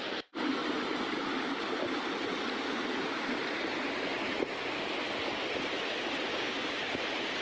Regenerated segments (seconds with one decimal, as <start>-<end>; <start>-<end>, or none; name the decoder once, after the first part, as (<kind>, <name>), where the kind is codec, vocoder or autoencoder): 6.3-6.9 (codec, DAC)